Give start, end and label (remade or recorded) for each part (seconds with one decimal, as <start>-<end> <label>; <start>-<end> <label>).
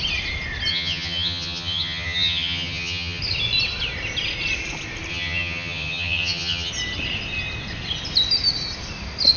0.0-0.7 recorded; 0.7-3.2 remade; 3.2-5.1 recorded; 5.1-6.7 remade; 6.7-9.4 recorded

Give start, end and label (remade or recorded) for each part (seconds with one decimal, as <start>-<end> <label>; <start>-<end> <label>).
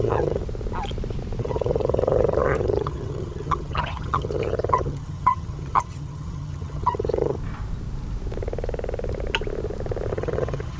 0.0-0.4 remade; 0.4-1.4 recorded; 1.4-7.4 remade; 7.4-10.1 recorded; 10.1-10.8 remade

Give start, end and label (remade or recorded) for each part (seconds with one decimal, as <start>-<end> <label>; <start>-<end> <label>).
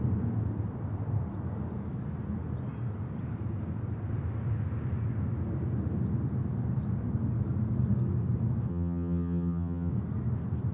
0.0-8.7 recorded; 8.7-9.9 remade; 9.9-10.7 recorded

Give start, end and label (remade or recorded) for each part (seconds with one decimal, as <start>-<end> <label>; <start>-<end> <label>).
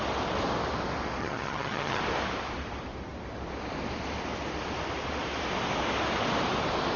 0.0-1.2 recorded; 1.2-2.0 remade; 2.0-7.0 recorded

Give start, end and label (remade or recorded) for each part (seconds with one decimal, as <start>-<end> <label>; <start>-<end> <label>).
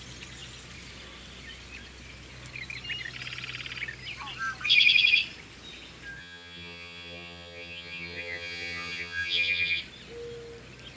0.0-6.2 recorded; 6.2-9.8 remade; 9.8-11.0 recorded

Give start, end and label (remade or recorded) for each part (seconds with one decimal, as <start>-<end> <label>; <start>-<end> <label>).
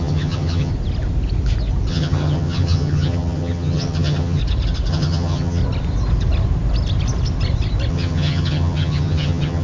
0.0-0.7 remade; 0.7-1.9 recorded; 1.9-4.4 remade; 4.4-4.9 recorded; 4.9-5.6 remade; 5.6-7.9 recorded; 7.9-9.6 remade